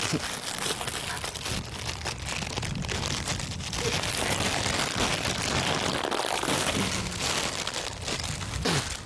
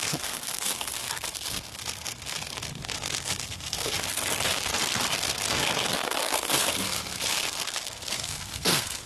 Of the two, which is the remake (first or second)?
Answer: second